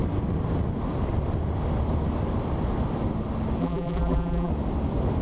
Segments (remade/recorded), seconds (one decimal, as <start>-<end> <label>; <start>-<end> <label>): 0.0-3.6 recorded; 3.6-4.5 remade; 4.5-5.2 recorded